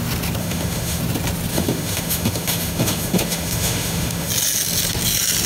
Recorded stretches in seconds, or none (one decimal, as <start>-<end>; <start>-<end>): 0.0-0.4; 1.0-1.5; 4.3-5.5